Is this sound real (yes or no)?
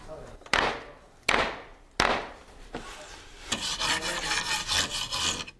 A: yes